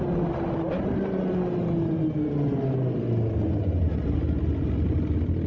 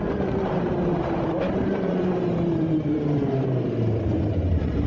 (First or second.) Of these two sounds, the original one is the first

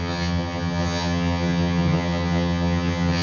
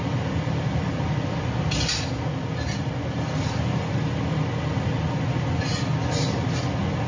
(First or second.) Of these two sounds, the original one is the second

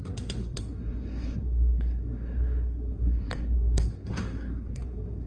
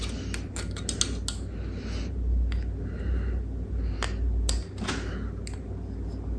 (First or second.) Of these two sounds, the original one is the second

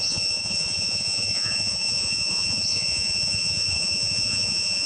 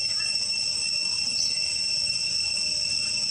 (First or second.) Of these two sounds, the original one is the second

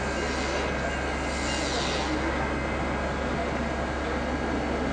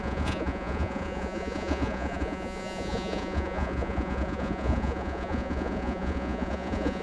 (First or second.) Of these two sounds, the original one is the first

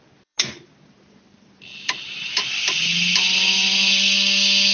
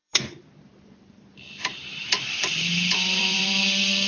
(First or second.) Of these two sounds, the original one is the first